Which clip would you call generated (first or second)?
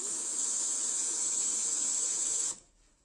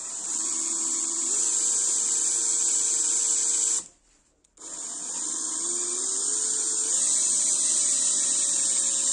first